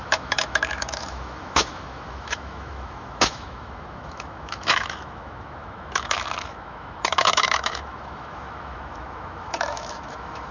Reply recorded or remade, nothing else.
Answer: remade